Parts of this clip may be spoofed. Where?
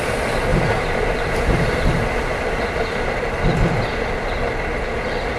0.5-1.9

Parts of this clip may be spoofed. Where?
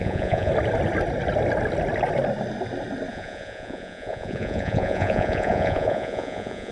0.0-0.5; 3.1-6.7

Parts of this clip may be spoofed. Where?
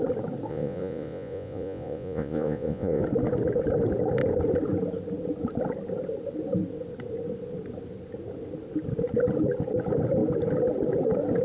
0.5-3.0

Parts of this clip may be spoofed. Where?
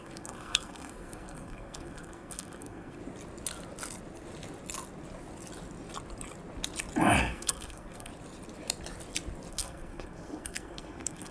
0.0-3.0; 7.2-8.1; 9.5-11.3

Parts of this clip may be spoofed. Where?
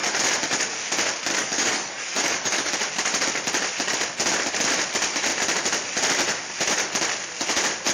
1.4-2.7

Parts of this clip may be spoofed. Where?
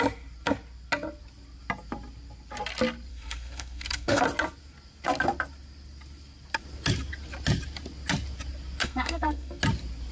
3.1-4.2; 8.8-9.6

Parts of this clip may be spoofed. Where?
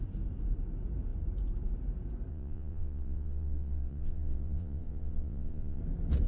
2.3-5.8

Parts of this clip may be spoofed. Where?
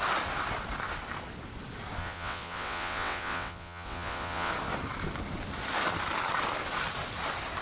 2.0-4.5